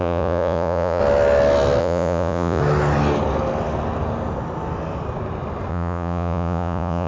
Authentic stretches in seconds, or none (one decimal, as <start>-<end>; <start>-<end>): 1.0-1.8; 2.6-5.7

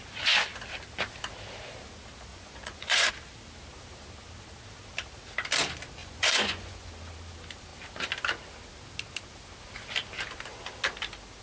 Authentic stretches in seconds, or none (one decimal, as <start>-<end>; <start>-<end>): 0.0-2.3; 3.1-6.0; 6.9-11.4

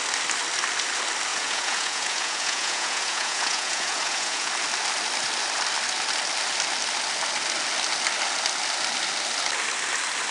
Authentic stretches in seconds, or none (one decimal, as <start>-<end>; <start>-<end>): 0.0-1.3; 4.5-10.3

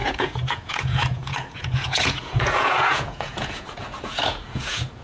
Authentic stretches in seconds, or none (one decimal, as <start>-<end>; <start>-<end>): none

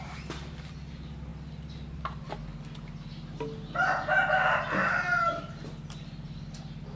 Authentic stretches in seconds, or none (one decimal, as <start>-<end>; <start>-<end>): 0.0-7.0

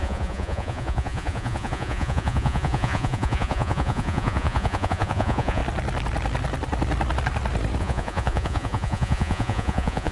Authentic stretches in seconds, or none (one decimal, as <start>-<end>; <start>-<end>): 5.6-7.8

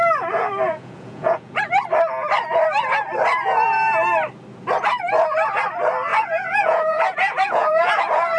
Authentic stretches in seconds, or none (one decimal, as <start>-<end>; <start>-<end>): 0.0-0.7; 1.6-6.1; 8.0-8.4